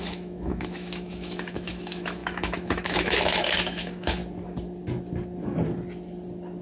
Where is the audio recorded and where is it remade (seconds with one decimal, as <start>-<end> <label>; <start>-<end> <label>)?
0.0-4.2 remade; 4.2-6.6 recorded